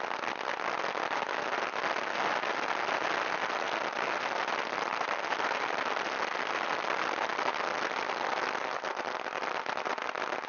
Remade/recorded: recorded